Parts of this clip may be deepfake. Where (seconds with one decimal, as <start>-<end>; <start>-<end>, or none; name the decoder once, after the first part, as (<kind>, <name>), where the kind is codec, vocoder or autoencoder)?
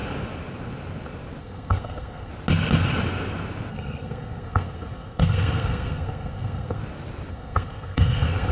1.4-2.3 (codec, SNAC); 3.7-6.8; 7.3-8.5